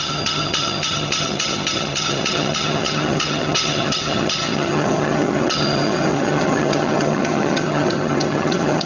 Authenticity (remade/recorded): remade